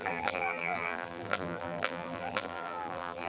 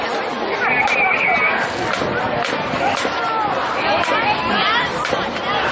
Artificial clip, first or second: first